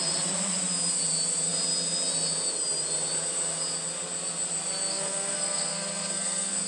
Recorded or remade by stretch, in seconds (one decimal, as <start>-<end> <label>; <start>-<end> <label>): 0.0-4.9 recorded; 4.9-6.7 remade